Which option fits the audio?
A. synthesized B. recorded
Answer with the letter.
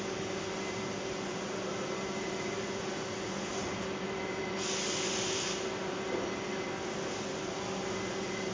B